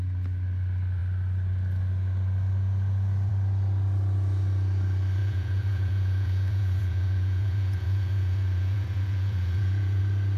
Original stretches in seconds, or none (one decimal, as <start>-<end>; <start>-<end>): 0.0-5.2; 10.0-10.4

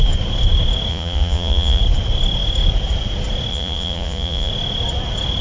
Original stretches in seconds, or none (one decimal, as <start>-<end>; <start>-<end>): 0.0-0.9; 1.8-3.5; 4.5-5.4

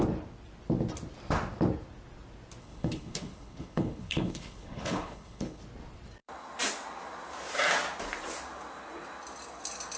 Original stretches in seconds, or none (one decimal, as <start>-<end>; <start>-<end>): 0.0-2.6; 5.6-10.0

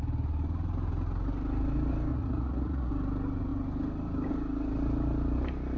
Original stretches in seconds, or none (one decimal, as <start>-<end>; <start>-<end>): 0.0-2.1; 2.9-5.8

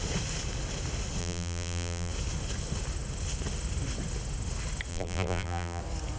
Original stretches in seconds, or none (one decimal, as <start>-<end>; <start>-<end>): 0.0-1.2; 2.1-4.9; 5.8-6.2

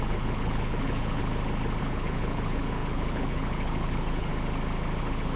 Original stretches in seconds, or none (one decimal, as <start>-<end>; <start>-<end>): 1.2-1.8; 4.3-5.0

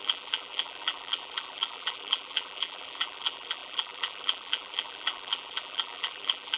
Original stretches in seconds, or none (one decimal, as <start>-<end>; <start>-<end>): none